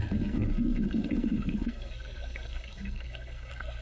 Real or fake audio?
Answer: fake